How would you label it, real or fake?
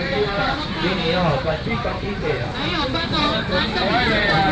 fake